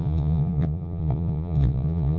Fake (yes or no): yes